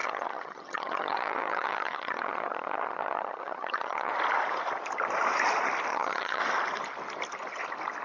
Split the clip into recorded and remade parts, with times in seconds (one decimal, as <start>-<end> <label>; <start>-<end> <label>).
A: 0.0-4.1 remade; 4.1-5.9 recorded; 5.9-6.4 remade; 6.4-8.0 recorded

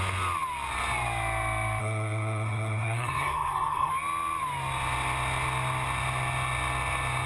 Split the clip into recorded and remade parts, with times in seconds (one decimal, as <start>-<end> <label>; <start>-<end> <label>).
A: 0.0-1.8 recorded; 1.8-3.9 remade; 3.9-7.3 recorded

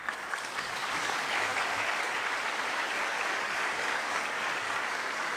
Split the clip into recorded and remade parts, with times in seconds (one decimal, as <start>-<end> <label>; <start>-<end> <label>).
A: 0.0-5.4 remade

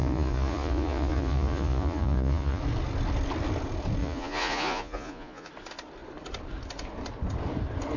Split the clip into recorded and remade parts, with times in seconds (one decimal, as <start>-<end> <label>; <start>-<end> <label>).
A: 0.0-2.6 remade; 2.6-4.0 recorded; 4.0-5.5 remade; 5.5-8.0 recorded